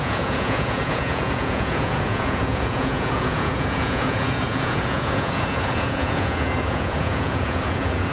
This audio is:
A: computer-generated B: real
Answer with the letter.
A